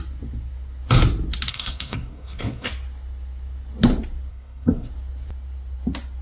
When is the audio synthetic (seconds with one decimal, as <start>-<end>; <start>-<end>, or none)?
1.5-2.7; 4.3-4.9